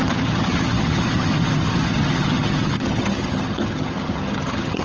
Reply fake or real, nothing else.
fake